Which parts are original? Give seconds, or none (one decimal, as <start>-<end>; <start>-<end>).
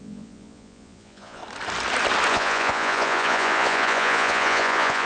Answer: 1.4-2.3